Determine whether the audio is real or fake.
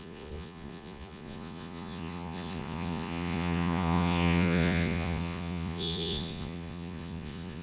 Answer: fake